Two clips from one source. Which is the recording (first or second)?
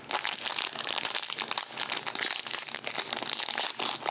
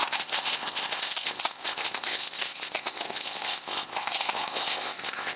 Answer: first